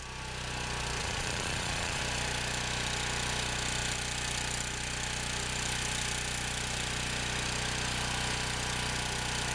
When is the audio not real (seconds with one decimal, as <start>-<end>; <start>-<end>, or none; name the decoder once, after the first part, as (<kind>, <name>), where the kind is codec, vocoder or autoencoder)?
1.0-2.0 (vocoder, Vocos)